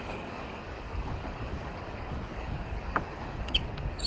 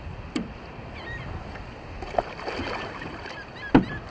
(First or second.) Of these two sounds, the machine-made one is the first